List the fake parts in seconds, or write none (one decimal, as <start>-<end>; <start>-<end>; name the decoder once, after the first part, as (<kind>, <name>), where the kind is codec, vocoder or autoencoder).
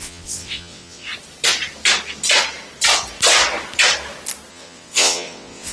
0.0-1.1 (vocoder, WaveNeXt); 4.5-5.7